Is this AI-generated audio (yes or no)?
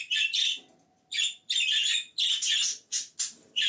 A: no